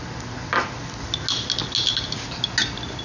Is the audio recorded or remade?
recorded